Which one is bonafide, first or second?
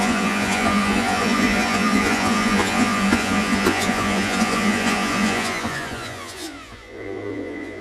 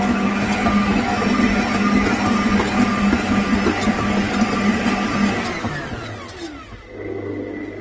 second